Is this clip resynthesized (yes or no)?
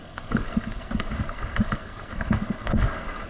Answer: yes